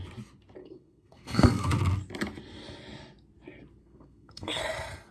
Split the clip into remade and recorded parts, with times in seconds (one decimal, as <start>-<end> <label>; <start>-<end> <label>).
0.0-0.6 recorded; 0.6-1.7 remade; 1.7-3.8 recorded; 3.8-4.6 remade; 4.6-5.1 recorded

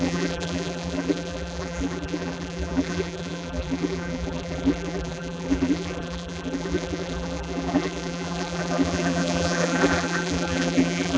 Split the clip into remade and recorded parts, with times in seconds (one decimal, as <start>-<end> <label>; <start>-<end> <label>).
0.0-11.2 remade

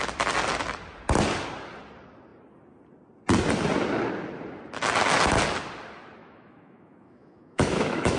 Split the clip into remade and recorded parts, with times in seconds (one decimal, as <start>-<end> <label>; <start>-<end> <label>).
0.0-6.2 recorded; 6.2-8.2 remade

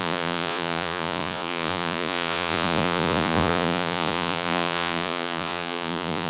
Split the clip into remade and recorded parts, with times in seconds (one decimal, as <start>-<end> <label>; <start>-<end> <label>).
0.0-6.3 remade

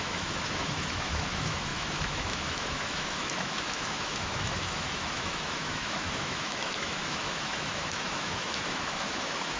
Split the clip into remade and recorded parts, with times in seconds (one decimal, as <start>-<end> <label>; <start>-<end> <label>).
0.0-9.6 remade

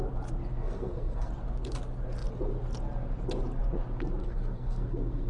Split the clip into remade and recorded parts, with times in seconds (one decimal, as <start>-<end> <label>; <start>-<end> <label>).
0.0-0.6 recorded; 0.6-1.3 remade; 1.3-4.2 recorded; 4.2-5.3 remade